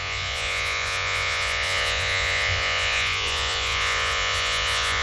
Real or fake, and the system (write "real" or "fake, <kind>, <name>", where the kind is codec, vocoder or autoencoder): fake, vocoder, Vocos